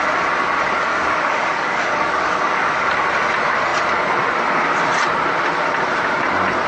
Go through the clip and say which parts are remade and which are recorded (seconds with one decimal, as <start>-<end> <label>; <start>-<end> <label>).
0.0-0.9 recorded; 0.9-2.9 remade; 2.9-6.7 recorded

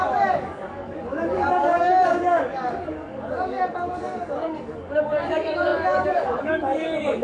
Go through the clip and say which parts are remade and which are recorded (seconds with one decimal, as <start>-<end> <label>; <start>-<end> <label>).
0.0-7.2 remade